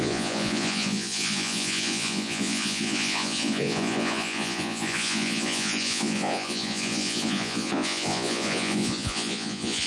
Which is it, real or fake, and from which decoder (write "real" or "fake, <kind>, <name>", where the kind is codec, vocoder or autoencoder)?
fake, vocoder, Vocos